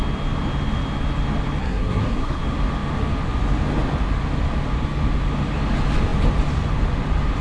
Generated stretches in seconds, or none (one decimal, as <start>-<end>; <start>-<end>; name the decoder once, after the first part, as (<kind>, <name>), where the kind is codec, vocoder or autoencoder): 1.6-2.4 (codec, SNAC)